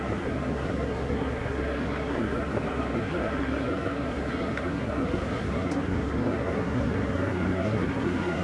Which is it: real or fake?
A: fake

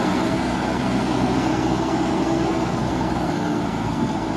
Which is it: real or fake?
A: fake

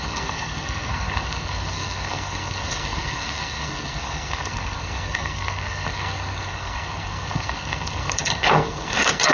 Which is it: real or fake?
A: fake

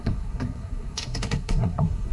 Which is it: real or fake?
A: fake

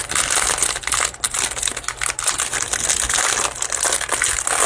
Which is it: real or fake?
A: real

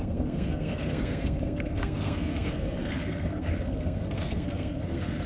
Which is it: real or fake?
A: fake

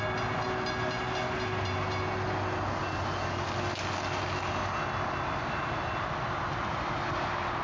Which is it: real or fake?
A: real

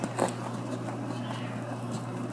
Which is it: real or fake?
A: real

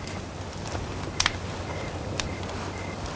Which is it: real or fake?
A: real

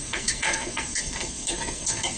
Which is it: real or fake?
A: fake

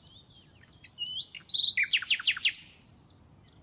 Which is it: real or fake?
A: real